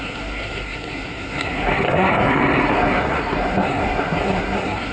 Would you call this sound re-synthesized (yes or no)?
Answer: yes